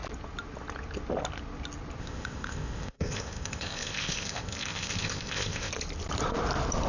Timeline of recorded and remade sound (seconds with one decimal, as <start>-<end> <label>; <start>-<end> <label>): 0.0-2.0 recorded; 2.0-5.7 remade; 5.7-6.9 recorded